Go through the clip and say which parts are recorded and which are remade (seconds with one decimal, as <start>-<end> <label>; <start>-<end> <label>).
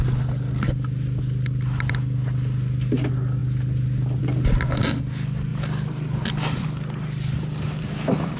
0.0-8.4 recorded